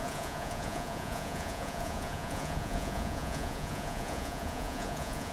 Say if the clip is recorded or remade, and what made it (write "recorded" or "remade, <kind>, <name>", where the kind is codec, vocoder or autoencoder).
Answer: remade, vocoder, Vocos